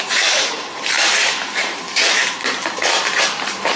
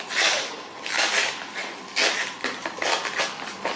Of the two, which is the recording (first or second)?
second